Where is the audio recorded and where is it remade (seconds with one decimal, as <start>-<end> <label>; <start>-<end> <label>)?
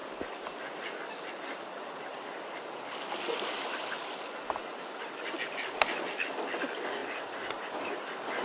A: 0.0-7.0 recorded; 7.0-8.0 remade; 8.0-8.4 recorded